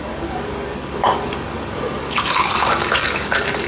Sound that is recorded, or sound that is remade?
remade